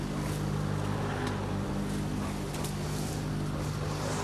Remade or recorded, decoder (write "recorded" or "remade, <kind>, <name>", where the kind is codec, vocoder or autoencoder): recorded